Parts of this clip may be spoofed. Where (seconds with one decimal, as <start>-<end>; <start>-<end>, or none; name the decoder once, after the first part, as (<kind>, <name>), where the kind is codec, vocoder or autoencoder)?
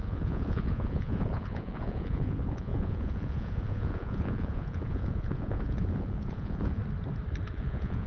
0.0-6.8 (vocoder, Vocos); 7.5-8.1